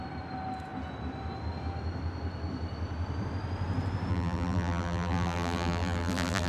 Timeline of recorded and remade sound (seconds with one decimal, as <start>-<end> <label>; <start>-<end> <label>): 0.0-4.1 recorded; 4.1-6.5 remade